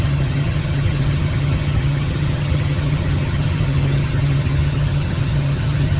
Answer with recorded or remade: remade